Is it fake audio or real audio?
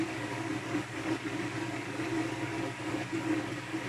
fake